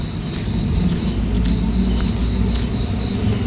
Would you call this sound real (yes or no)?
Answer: yes